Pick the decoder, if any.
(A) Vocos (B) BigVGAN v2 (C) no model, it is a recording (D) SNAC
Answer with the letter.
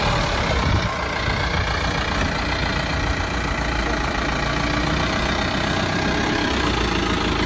C